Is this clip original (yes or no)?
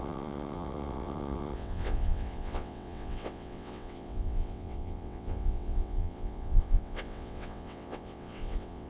no